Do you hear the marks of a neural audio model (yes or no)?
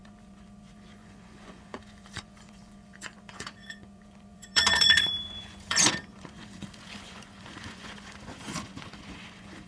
yes